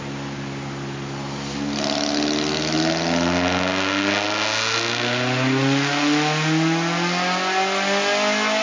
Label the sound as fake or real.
real